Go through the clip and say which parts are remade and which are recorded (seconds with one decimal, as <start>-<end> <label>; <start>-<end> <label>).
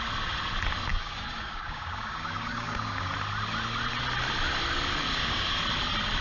0.0-0.9 recorded; 0.9-3.1 remade; 3.1-5.1 recorded; 5.1-5.6 remade; 5.6-6.2 recorded